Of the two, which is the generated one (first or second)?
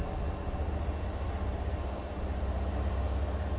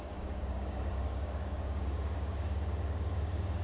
second